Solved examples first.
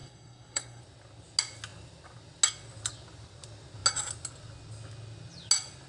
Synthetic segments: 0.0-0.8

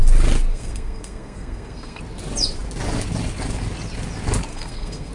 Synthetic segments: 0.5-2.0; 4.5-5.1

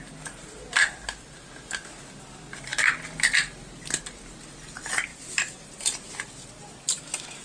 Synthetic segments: 5.1-6.5

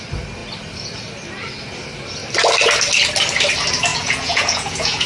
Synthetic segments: 3.9-5.1